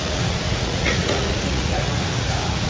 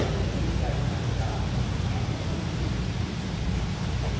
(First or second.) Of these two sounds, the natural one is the second